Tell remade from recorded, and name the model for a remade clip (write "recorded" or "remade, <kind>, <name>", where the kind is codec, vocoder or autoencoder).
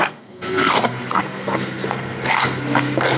remade, codec, SNAC